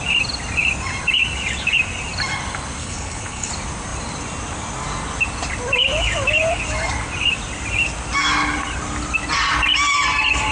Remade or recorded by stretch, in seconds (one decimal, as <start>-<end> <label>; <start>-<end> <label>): 0.0-2.8 recorded; 2.8-3.5 remade; 3.5-10.5 recorded